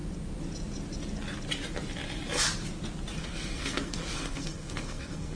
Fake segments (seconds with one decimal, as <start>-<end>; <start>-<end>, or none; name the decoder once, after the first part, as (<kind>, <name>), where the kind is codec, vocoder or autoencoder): 3.2-5.4 (codec, SNAC)